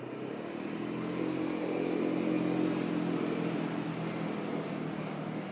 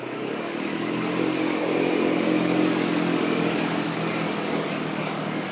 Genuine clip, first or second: first